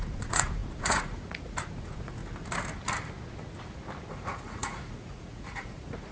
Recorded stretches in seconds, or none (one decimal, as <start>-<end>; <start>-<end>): 2.2-4.1